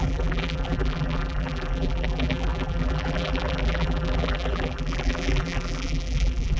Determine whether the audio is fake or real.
fake